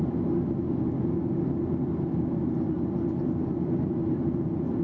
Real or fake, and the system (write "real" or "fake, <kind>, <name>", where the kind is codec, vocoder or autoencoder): real